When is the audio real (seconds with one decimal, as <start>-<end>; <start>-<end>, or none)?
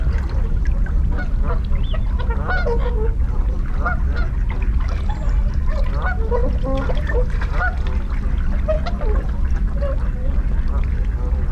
0.0-11.5